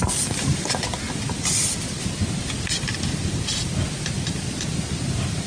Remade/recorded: recorded